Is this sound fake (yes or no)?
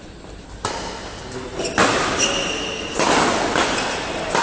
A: no